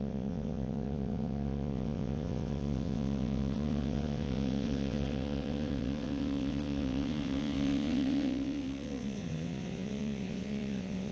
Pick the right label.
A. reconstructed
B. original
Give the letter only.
A